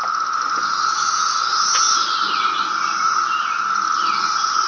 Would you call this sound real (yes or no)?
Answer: yes